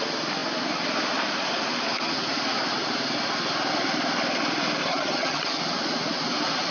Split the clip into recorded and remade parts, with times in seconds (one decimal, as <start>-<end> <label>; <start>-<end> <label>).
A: 0.0-4.8 recorded; 4.8-5.6 remade; 5.6-6.7 recorded